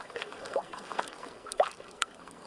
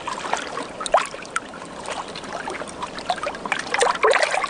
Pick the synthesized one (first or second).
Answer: first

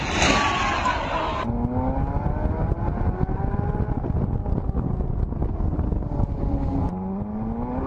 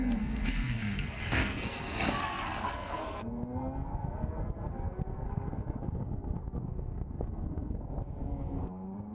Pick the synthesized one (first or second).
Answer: second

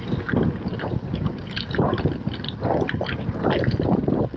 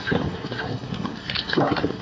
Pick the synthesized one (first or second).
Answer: second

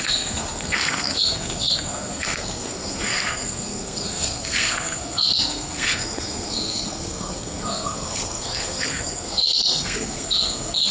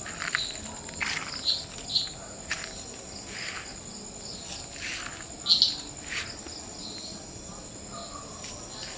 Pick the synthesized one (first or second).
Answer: first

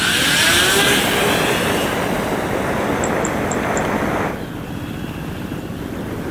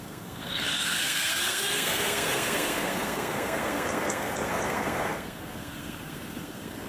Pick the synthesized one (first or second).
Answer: second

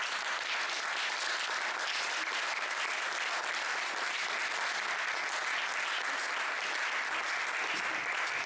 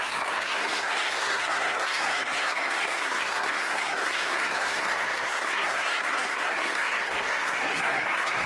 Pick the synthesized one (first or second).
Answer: second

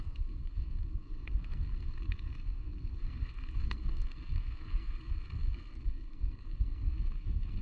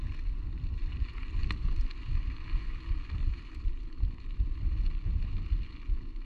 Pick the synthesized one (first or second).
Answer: first